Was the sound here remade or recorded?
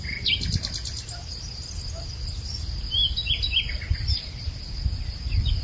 recorded